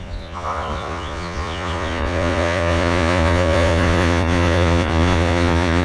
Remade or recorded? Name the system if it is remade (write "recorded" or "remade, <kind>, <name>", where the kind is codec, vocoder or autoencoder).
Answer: remade, vocoder, Vocos